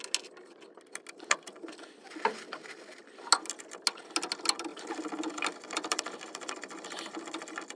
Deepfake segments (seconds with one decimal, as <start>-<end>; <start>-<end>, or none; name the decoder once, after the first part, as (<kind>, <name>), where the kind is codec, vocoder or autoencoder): 4.7-5.3 (vocoder, BigVGAN v2)